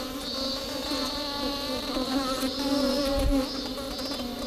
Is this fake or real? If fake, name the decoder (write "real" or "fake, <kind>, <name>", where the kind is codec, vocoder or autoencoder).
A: real